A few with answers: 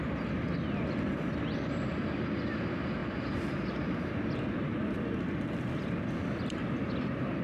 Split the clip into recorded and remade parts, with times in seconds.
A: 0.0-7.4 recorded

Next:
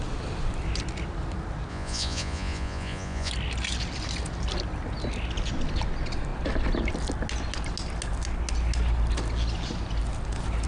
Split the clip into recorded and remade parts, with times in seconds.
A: 0.0-1.7 recorded; 1.7-3.3 remade; 3.3-10.7 recorded

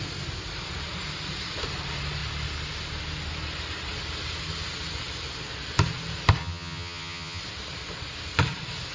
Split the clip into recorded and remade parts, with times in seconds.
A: 0.0-6.4 recorded; 6.4-7.4 remade; 7.4-8.9 recorded